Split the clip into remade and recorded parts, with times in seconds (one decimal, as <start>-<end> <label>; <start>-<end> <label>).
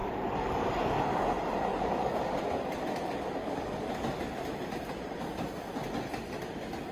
0.0-0.8 remade; 0.8-1.7 recorded; 1.7-2.4 remade; 2.4-3.4 recorded; 3.4-3.9 remade; 3.9-6.9 recorded